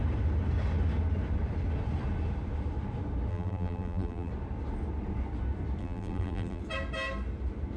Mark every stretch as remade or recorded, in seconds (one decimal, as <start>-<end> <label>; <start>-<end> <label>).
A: 0.0-3.3 recorded; 3.3-4.3 remade; 4.3-5.8 recorded; 5.8-6.6 remade; 6.6-7.8 recorded